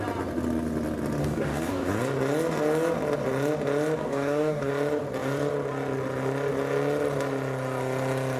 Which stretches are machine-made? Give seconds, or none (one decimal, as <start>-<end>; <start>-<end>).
1.2-1.9; 4.0-4.7